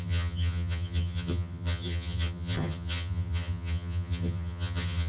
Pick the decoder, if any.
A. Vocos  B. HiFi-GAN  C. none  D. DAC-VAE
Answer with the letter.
B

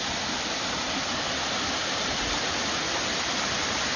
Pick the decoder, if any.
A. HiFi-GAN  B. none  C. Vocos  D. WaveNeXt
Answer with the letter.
B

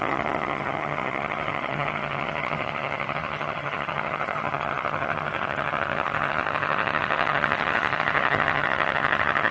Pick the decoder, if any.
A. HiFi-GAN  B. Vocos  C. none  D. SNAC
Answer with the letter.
A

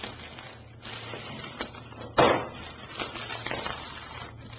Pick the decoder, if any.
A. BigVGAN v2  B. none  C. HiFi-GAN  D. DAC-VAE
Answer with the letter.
B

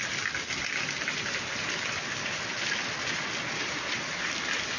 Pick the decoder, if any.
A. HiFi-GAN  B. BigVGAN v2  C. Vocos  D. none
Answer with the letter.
D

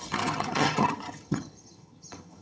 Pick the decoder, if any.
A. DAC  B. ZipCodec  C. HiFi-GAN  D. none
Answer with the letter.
C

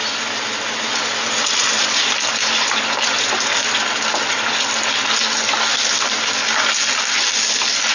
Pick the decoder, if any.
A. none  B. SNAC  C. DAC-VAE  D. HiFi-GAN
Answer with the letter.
A